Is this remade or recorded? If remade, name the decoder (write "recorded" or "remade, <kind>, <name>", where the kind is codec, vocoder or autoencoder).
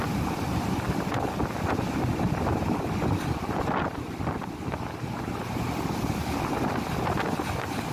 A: recorded